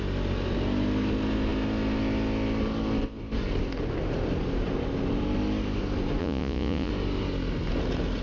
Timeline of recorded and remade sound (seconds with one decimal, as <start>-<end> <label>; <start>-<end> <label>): 0.0-6.2 recorded; 6.2-6.9 remade; 6.9-8.2 recorded